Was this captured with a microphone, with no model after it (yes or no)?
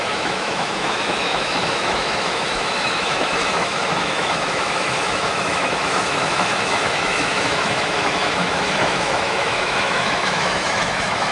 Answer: no